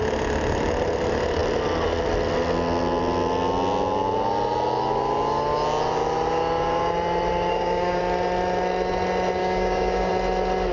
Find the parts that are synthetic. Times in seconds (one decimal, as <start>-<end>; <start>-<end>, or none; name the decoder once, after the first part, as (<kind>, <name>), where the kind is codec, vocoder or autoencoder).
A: 7.5-8.0 (codec, DAC); 9.4-10.1